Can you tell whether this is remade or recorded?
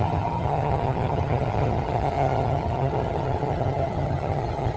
remade